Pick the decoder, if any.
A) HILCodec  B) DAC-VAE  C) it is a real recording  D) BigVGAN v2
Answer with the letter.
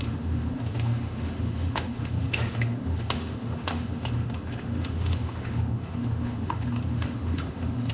B